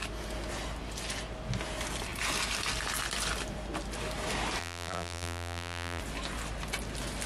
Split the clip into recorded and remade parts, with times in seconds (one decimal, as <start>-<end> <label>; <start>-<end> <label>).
0.0-4.6 recorded; 4.6-6.0 remade; 6.0-7.3 recorded

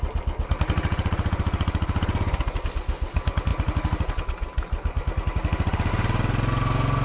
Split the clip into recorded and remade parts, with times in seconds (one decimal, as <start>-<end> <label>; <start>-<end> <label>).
0.0-7.0 recorded